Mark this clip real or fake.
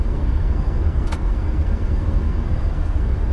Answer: fake